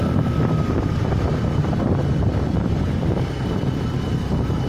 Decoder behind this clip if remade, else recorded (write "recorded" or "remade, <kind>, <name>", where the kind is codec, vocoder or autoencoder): recorded